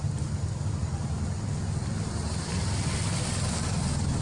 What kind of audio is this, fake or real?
real